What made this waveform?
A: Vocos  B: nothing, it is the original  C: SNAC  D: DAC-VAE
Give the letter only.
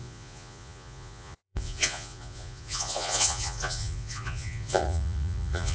A